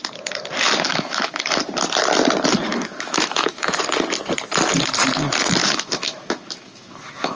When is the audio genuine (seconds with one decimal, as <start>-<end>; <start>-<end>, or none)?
0.0-0.9; 1.6-2.7; 3.8-5.6